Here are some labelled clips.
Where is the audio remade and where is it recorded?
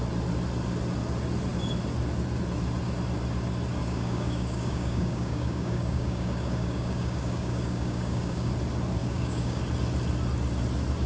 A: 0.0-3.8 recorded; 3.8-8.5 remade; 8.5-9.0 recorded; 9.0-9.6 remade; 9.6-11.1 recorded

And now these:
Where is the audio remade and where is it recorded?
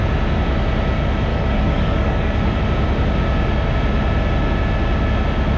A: 0.0-1.3 recorded; 1.3-2.6 remade; 2.6-5.6 recorded